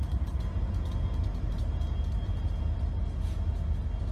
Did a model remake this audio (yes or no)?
no